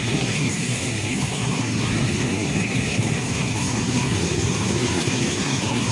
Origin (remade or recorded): remade